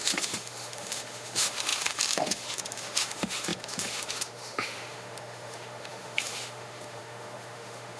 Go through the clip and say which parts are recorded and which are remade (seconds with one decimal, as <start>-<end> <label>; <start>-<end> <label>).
0.0-8.0 remade